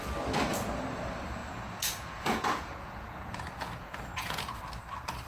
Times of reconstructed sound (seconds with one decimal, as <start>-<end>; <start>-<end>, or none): 1.4-4.6